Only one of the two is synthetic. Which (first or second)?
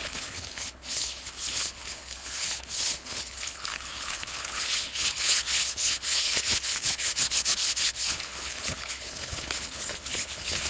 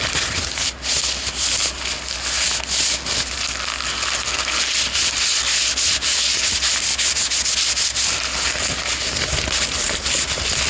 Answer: first